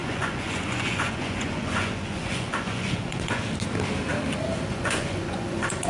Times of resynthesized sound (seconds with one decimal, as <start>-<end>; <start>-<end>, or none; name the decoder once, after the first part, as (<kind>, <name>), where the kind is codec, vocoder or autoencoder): 0.0-3.4 (vocoder, Vocos); 4.7-5.9